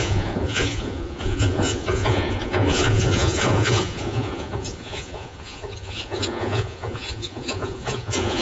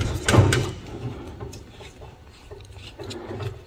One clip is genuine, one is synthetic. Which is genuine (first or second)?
second